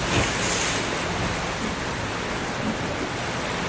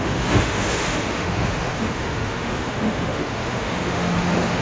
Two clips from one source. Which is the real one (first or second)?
first